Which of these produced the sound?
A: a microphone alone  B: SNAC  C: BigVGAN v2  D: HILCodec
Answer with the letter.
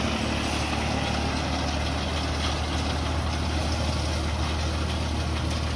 A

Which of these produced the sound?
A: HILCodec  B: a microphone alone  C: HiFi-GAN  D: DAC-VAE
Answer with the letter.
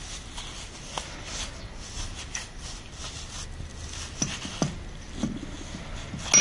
B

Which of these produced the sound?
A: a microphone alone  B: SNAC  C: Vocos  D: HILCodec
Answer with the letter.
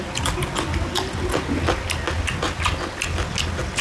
A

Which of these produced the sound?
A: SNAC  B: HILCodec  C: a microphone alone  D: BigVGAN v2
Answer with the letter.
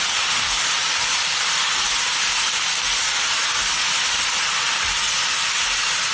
C